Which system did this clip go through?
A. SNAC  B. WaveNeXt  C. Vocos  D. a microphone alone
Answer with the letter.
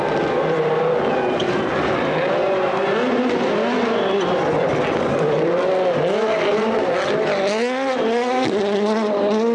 D